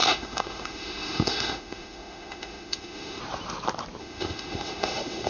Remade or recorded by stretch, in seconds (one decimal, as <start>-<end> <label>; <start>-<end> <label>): 0.0-3.2 remade; 3.2-4.0 recorded; 4.0-5.3 remade